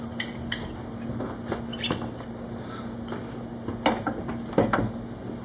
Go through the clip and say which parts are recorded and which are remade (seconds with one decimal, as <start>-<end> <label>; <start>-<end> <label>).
0.0-5.4 recorded